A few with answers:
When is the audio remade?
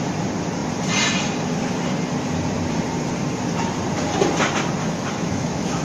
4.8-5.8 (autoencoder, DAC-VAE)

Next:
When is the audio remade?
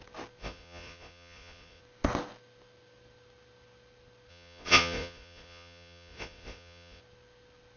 0.4-1.8 (vocoder, Vocos); 4.3-7.0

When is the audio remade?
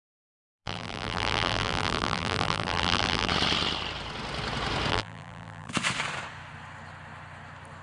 0.5-3.3 (vocoder, BigVGAN v2); 4.9-5.7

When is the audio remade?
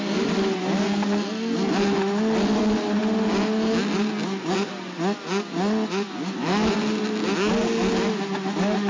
none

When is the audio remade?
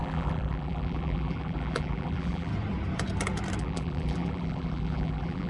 0.0-2.5 (vocoder, BigVGAN v2); 3.6-5.5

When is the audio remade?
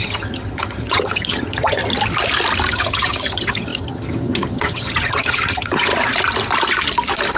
0.0-1.8 (vocoder, HiFi-GAN); 2.7-5.9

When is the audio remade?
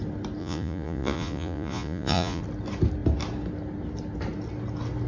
0.4-2.4 (vocoder, Vocos)